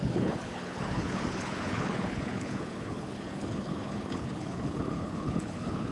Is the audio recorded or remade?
remade